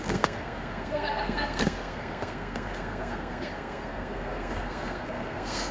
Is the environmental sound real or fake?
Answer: fake